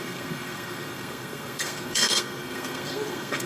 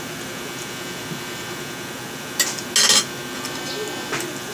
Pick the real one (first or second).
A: second